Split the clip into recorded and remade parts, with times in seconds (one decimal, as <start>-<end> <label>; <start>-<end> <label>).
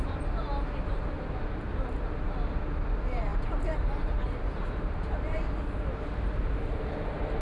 0.0-7.4 remade